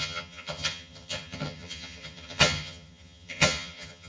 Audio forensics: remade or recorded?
remade